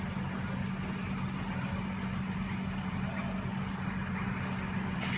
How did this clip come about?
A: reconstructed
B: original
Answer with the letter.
B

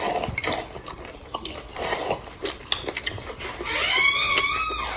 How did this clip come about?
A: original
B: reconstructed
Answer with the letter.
A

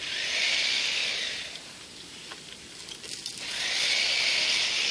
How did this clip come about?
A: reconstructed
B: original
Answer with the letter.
B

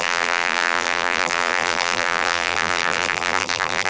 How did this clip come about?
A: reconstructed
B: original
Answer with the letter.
A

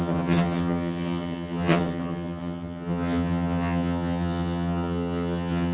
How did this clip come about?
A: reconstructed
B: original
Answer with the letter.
A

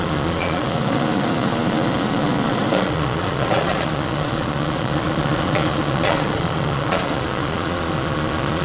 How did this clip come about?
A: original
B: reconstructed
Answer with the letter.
B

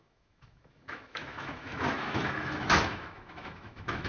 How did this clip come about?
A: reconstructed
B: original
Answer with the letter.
A